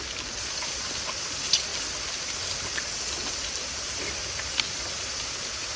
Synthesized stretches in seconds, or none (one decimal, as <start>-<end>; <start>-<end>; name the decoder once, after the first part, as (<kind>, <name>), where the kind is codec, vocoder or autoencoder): none